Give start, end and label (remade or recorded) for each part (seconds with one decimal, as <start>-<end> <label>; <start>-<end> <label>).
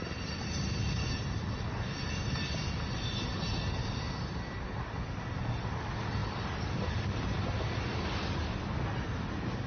0.0-6.2 recorded; 6.2-7.4 remade; 7.4-9.7 recorded